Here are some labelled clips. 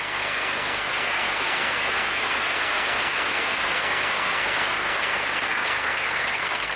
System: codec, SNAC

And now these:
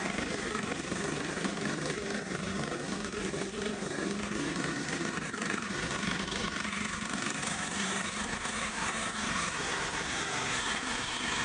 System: codec, SNAC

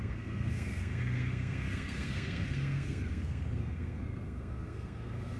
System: codec, SNAC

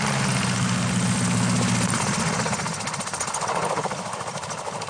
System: none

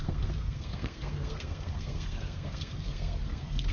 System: codec, SNAC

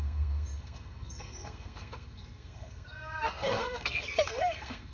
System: codec, SNAC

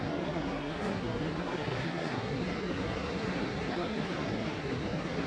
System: codec, SNAC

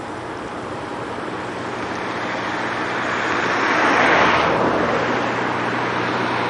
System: none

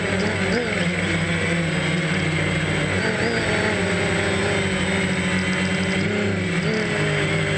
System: none